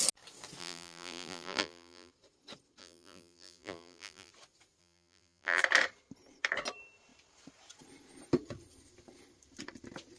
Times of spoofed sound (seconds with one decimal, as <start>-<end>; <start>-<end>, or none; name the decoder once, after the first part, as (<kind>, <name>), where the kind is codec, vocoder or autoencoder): 0.6-2.1 (vocoder, BigVGAN v2); 2.8-4.3; 4.8-5.6